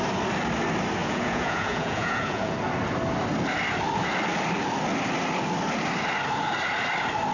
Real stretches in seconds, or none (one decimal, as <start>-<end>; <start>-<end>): 0.0-1.0; 2.5-7.3